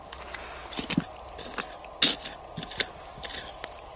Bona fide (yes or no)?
yes